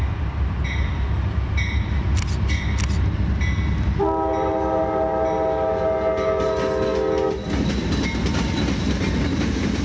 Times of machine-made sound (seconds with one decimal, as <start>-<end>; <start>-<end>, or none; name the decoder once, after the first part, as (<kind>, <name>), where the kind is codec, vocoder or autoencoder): none